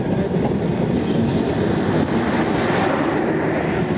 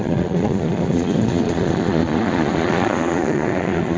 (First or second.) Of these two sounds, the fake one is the second